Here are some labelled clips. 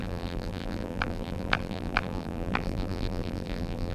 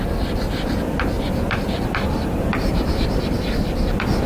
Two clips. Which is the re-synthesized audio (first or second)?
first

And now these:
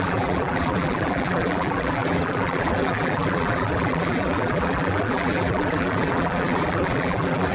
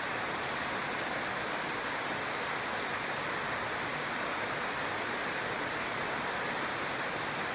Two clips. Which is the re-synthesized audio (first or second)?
first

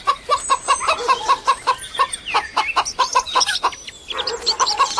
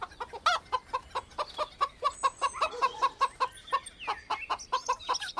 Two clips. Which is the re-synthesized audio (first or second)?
first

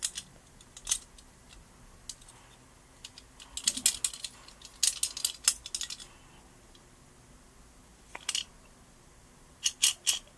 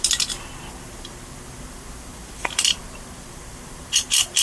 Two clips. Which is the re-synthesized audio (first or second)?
second